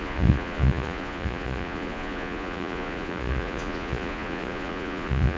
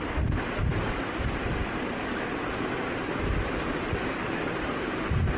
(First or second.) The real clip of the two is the second